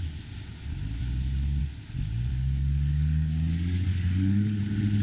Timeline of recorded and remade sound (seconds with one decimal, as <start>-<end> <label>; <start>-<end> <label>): 0.0-1.0 recorded; 1.0-1.6 remade; 1.6-2.3 recorded; 2.3-4.6 remade; 4.6-5.0 recorded